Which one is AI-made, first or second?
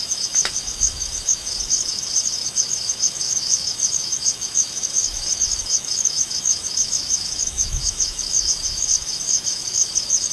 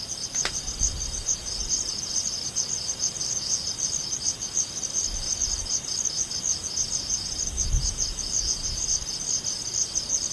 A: first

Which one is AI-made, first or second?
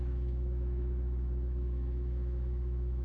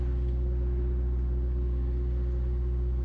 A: first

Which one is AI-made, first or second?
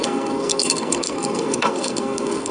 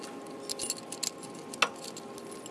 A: first